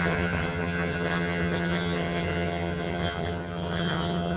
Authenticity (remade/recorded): remade